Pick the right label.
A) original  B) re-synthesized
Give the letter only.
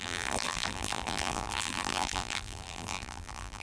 B